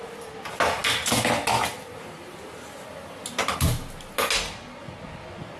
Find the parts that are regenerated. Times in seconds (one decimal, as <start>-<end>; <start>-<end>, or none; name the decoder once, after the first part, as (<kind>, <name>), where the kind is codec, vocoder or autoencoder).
none